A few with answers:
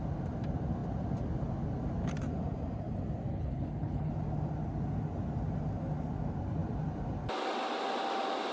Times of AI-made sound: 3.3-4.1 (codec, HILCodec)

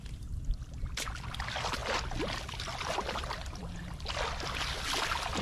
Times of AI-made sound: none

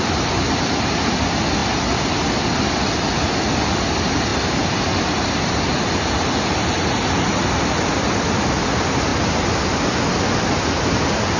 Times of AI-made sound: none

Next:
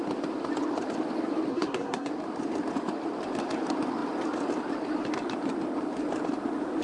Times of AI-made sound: 1.5-2.1 (codec, SNAC)

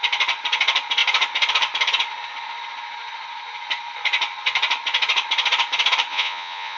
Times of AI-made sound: 6.1-6.8 (vocoder, Vocos)

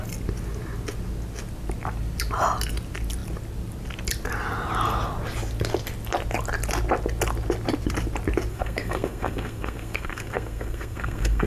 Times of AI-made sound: 8.5-11.5 (codec, SNAC)

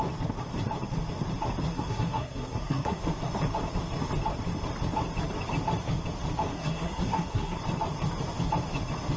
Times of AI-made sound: 1.7-3.0 (codec, SNAC); 6.5-7.6